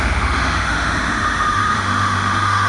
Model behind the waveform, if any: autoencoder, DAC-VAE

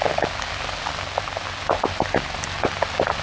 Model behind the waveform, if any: none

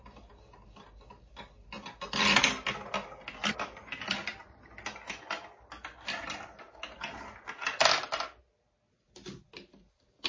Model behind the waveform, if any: none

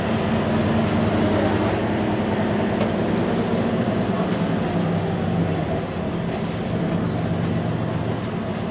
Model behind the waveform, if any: none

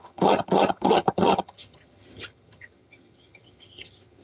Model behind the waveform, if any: vocoder, HiFi-GAN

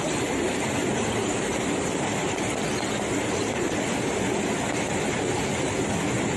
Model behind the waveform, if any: none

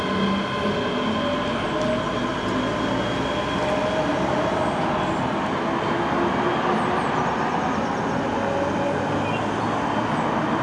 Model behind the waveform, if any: none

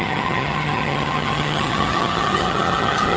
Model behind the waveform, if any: vocoder, HiFi-GAN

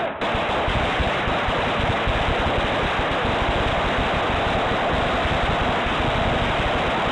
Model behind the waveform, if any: none